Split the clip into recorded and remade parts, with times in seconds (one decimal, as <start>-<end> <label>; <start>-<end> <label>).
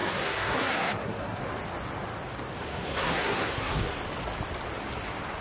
0.0-1.4 remade; 1.4-2.7 recorded; 2.7-4.0 remade; 4.0-5.4 recorded